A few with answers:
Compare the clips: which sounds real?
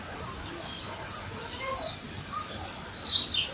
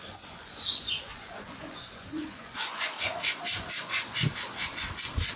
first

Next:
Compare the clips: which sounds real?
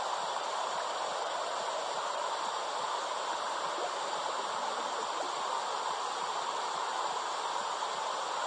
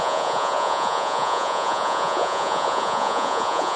first